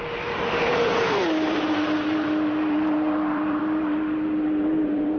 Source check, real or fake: fake